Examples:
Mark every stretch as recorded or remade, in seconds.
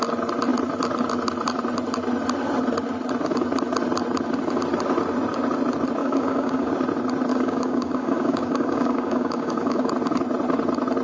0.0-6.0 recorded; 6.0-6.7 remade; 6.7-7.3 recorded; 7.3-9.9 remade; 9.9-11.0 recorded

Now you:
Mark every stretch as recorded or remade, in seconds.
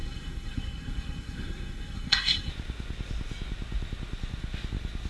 0.0-2.5 remade; 2.5-5.1 recorded